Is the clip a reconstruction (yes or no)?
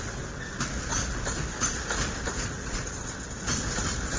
no